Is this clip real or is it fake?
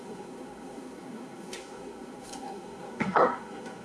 fake